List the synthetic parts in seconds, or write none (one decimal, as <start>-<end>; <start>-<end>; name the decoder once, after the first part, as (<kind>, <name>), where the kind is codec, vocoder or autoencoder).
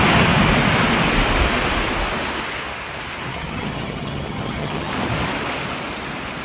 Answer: 3.3-4.9 (vocoder, HiFi-GAN)